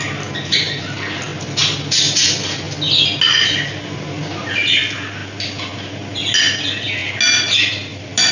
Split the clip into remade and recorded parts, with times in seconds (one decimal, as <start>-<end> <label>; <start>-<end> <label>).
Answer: 0.0-8.3 recorded